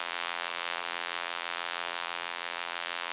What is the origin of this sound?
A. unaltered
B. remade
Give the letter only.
B